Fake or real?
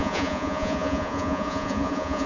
fake